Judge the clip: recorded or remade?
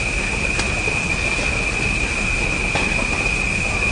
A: recorded